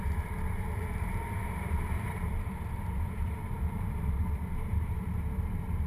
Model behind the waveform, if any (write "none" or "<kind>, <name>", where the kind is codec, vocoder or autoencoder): vocoder, BigVGAN v2